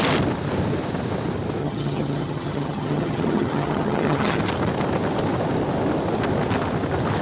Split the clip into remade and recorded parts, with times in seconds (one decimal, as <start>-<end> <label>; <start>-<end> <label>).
0.0-1.6 recorded; 1.6-4.4 remade; 4.4-7.2 recorded